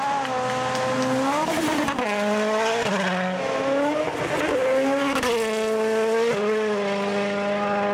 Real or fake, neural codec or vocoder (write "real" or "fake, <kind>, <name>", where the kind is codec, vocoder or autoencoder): real